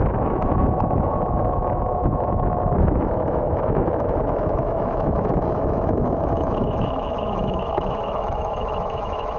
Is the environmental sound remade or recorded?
remade